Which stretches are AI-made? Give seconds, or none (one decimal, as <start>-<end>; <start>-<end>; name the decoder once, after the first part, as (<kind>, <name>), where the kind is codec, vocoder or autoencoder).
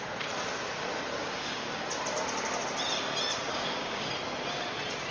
1.2-1.8 (codec, DAC); 3.5-4.1